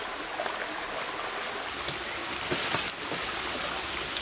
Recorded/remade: recorded